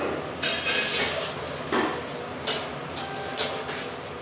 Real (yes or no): yes